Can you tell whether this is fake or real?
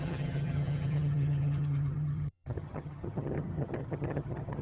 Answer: fake